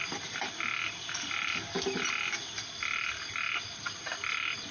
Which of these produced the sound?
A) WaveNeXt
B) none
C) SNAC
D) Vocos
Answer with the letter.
B